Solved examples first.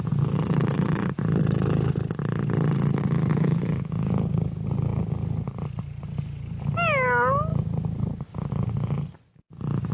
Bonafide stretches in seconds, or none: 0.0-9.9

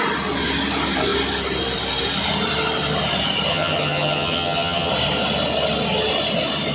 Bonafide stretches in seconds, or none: 0.0-3.5; 4.9-6.7

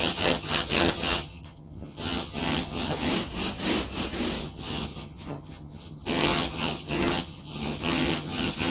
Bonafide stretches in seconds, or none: 3.1-4.4

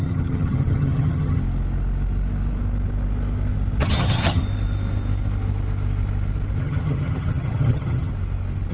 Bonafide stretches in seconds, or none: 1.4-3.8; 4.4-6.6; 8.1-8.7

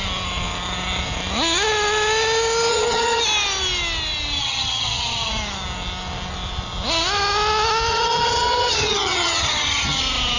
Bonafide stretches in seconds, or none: 0.0-2.7; 3.2-4.4; 5.3-7.9; 10.0-10.4